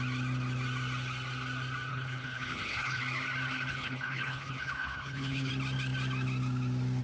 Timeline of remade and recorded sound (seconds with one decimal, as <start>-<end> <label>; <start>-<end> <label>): 0.0-1.9 recorded; 1.9-3.0 remade; 3.0-3.7 recorded; 3.7-5.5 remade; 5.5-7.0 recorded